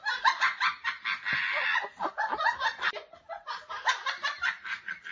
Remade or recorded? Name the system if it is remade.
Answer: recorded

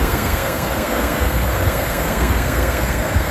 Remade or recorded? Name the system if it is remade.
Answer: remade, codec, SNAC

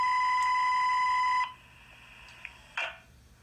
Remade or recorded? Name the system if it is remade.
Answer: recorded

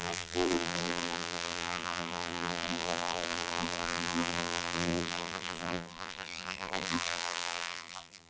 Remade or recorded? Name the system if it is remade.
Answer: remade, vocoder, BigVGAN v2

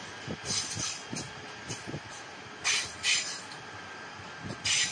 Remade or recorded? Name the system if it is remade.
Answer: recorded